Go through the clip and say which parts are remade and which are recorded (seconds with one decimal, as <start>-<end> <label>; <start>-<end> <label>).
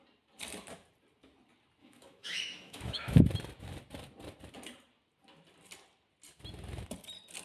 0.0-1.8 recorded; 1.8-3.2 remade; 3.2-7.4 recorded